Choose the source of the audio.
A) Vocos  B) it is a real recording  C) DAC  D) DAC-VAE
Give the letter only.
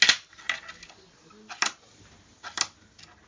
B